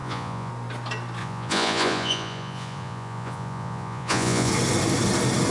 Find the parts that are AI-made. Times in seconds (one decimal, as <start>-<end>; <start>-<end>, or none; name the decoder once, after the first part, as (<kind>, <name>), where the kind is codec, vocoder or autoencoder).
0.0-0.5 (vocoder, Vocos); 1.2-4.5